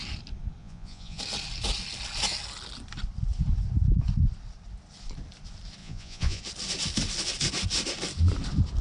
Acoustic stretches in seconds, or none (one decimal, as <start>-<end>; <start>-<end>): 0.0-0.6; 1.2-5.8; 6.4-8.8